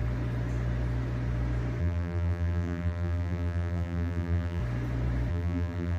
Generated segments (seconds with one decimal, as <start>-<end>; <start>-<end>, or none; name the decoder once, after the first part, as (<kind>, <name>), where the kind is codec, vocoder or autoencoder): 1.8-4.6 (vocoder, BigVGAN v2); 5.3-6.0